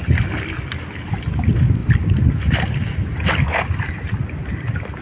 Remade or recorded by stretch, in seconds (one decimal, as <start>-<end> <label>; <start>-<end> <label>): 0.0-5.0 recorded